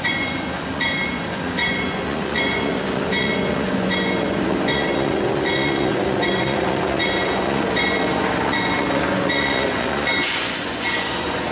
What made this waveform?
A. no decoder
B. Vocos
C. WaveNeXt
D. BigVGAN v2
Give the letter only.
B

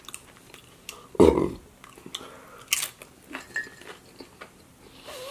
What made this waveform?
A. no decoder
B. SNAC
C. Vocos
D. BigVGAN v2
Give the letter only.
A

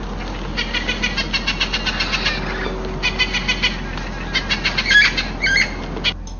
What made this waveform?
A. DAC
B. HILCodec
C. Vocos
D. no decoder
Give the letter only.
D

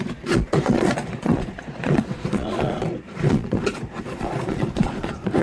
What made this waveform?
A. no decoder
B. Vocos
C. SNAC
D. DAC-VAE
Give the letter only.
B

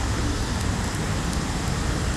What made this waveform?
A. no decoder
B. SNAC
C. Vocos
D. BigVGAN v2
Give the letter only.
A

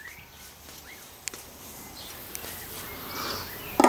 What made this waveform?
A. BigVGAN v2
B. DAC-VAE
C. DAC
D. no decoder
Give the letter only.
D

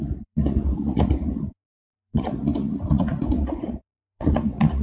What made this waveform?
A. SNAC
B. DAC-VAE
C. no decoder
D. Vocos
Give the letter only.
D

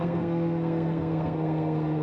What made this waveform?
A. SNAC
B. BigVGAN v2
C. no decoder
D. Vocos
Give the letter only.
A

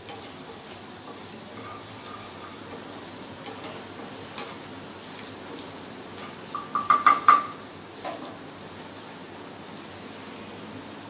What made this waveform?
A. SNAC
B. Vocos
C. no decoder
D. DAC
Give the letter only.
C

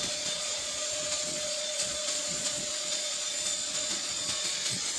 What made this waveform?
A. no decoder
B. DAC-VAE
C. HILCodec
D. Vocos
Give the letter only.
D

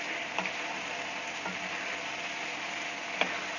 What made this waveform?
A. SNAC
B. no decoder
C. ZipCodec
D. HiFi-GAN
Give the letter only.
B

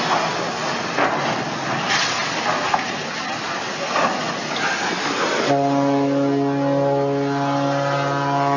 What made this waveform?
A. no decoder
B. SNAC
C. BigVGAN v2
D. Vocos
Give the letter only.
A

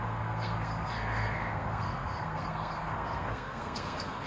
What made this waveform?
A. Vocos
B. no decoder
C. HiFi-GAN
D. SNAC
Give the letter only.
D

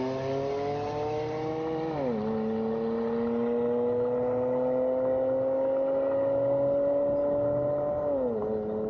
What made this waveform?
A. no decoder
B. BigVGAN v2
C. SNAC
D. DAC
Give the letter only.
A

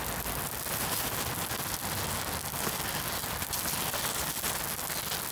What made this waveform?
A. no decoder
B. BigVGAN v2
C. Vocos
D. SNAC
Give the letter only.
A